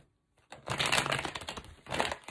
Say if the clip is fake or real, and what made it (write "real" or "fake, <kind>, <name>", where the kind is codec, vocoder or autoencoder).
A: real